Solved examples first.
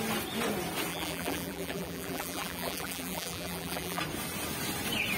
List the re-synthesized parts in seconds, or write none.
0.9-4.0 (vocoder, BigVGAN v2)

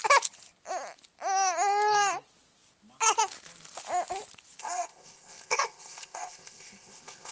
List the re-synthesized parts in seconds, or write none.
4.6-7.3 (codec, ZipCodec)

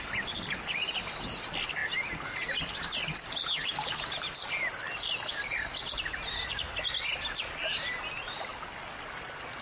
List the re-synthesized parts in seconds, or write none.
none

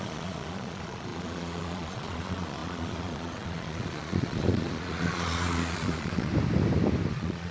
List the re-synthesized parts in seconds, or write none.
0.0-6.3 (vocoder, Vocos); 7.1-7.5

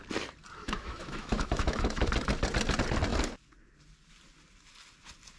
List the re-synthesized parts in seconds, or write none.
0.6-2.1 (autoencoder, DAC-VAE)

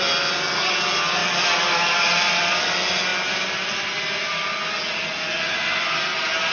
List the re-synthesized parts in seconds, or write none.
none